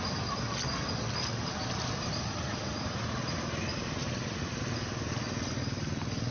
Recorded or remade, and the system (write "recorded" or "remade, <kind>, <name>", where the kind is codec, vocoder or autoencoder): recorded